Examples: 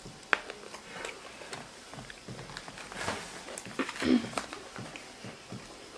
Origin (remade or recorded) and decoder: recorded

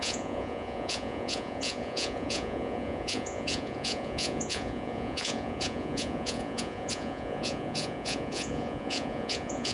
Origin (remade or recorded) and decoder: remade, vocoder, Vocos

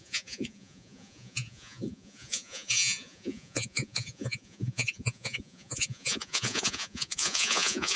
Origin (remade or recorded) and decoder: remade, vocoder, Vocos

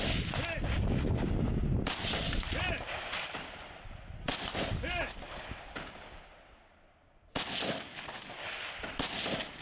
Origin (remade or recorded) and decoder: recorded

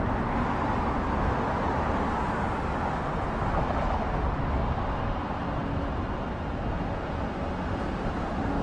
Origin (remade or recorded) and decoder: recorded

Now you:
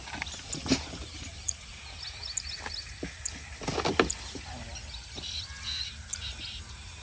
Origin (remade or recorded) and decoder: recorded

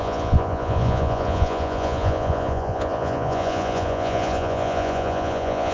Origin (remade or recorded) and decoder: remade, vocoder, Vocos